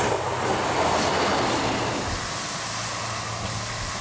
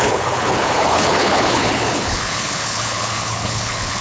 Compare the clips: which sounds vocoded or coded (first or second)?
second